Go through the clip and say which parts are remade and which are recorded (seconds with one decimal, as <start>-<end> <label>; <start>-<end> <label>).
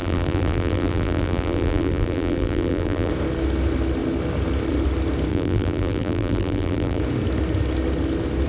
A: 0.0-3.1 remade; 3.1-5.3 recorded; 5.3-7.0 remade; 7.0-8.5 recorded